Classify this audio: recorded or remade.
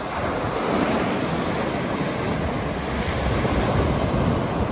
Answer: recorded